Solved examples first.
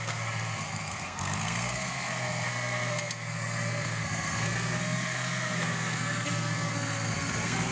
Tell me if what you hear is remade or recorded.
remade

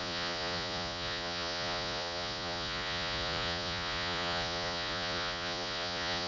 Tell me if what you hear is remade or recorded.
remade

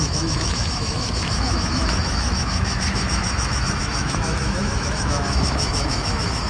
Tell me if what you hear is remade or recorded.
remade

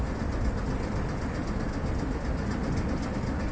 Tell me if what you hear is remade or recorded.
recorded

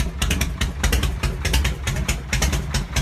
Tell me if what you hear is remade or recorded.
remade